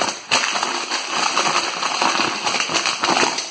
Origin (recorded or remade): remade